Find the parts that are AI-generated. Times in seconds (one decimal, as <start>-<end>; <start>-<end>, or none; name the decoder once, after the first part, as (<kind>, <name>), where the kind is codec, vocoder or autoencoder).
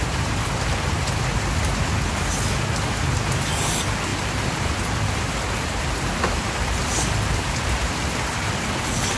none